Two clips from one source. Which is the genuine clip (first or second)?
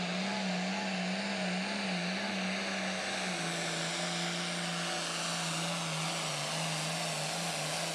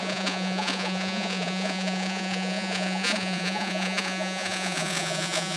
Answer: first